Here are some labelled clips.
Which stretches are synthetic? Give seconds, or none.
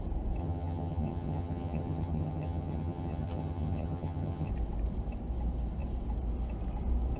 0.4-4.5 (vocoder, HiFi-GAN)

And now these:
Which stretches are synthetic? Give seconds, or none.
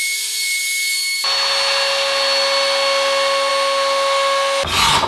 none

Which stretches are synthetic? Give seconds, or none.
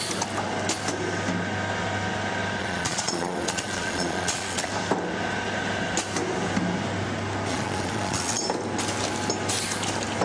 2.6-4.7 (vocoder, Vocos); 7.5-8.4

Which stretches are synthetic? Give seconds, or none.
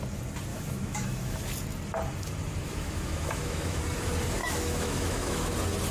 0.5-1.4 (autoencoder, DAC-VAE); 2.6-3.8; 4.4-5.5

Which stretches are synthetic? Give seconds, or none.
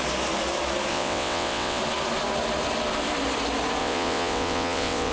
0.9-1.8 (vocoder, WaveNeXt); 3.8-5.1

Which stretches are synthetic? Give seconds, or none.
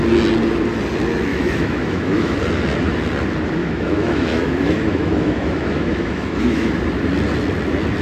1.3-2.4 (autoencoder, DAC-VAE); 3.6-6.7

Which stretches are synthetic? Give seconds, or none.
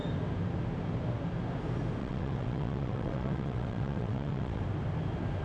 2.0-4.6 (vocoder, WaveNeXt)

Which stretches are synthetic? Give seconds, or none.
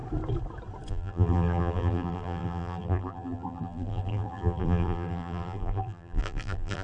0.9-6.8 (vocoder, BigVGAN v2)